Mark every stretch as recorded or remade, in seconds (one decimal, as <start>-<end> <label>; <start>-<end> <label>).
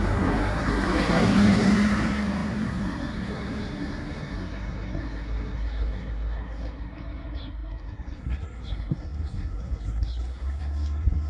0.0-11.3 remade